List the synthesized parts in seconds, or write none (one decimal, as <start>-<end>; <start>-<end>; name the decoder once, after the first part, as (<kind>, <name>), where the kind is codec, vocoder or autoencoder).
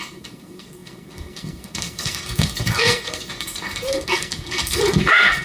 0.0-5.4 (codec, SNAC)